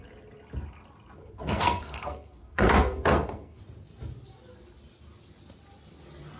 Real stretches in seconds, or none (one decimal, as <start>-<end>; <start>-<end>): 0.0-1.2; 3.6-6.4